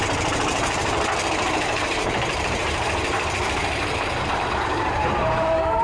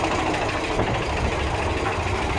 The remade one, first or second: first